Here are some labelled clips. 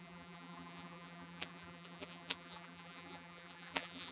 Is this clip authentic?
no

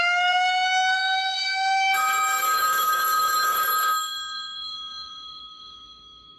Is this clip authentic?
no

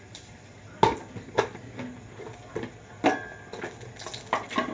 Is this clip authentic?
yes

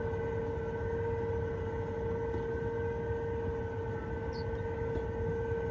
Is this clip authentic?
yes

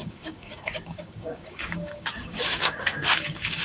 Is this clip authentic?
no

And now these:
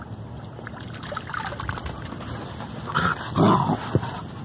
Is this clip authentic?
yes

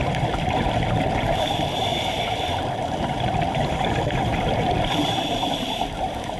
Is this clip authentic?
no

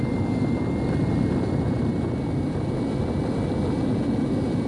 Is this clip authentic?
yes